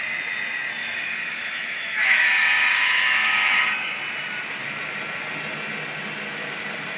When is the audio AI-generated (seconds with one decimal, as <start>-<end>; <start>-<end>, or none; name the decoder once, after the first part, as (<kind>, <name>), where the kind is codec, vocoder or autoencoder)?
0.8-4.0 (autoencoder, DAC-VAE)